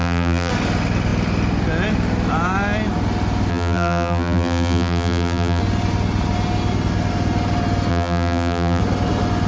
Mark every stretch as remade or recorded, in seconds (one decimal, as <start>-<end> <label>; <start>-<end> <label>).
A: 0.0-0.5 remade; 0.5-3.5 recorded; 3.5-5.6 remade; 5.6-7.9 recorded; 7.9-8.8 remade; 8.8-9.5 recorded